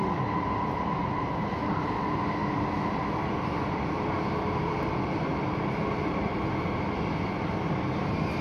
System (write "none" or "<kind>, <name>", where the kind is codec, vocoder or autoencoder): none